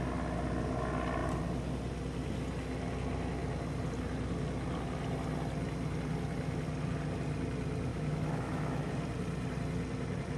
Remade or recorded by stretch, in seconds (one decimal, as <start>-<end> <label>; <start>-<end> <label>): 0.0-7.9 recorded; 7.9-8.9 remade; 8.9-10.4 recorded